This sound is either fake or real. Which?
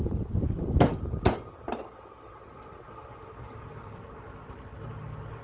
real